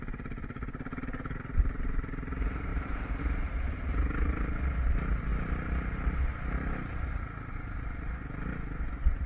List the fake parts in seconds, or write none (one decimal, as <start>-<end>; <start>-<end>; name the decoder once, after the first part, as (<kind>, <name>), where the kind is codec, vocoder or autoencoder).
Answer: 0.0-0.9 (vocoder, BigVGAN v2); 1.4-9.3